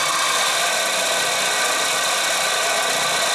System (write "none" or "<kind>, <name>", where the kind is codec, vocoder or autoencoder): none